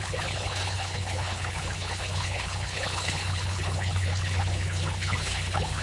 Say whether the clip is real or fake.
fake